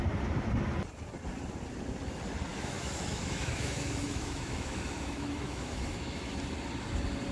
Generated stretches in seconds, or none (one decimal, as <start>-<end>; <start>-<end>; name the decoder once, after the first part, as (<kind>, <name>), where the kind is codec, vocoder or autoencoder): 2.5-6.3 (autoencoder, DAC-VAE)